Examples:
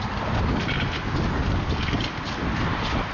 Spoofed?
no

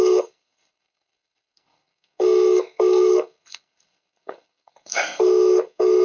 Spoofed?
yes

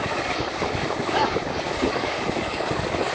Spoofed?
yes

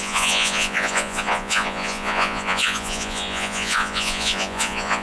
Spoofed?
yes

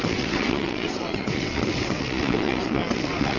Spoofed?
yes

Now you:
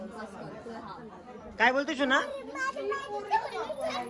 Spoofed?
no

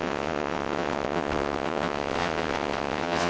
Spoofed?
yes